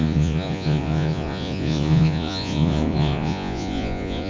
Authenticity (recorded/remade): remade